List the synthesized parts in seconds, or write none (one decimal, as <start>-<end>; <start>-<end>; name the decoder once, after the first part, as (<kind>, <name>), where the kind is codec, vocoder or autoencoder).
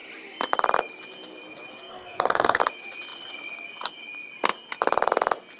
1.9-2.6 (codec, SNAC)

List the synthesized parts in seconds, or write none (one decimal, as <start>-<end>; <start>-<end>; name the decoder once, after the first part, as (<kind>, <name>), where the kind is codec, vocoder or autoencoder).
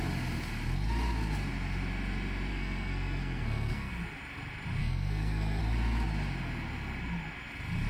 2.5-3.9 (codec, SNAC); 4.8-5.6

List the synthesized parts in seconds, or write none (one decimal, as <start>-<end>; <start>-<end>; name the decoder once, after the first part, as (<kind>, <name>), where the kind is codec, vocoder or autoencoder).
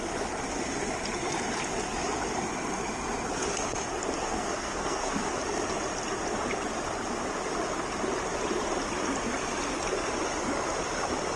4.2-5.4 (codec, SNAC)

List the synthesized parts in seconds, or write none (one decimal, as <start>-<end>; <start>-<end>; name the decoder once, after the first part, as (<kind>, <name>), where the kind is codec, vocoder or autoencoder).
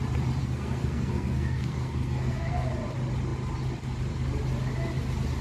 0.4-2.7 (codec, SNAC)